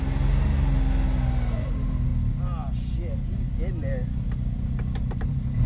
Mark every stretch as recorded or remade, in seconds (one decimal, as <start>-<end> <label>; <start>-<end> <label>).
0.0-5.7 recorded